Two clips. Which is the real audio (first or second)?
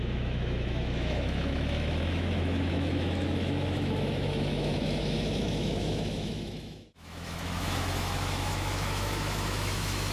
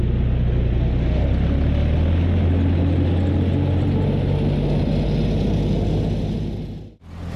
second